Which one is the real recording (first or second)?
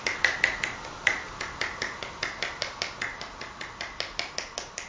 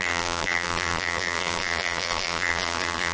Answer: first